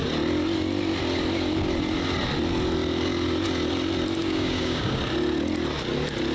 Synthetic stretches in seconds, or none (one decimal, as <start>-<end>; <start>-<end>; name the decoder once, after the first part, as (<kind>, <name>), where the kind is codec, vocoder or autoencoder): 4.2-5.0 (codec, DAC)